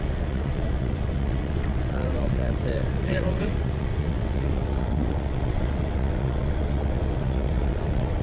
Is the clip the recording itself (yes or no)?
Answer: no